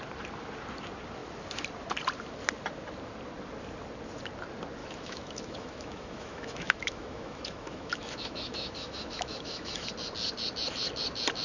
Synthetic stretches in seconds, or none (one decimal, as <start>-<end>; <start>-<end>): 4.8-9.9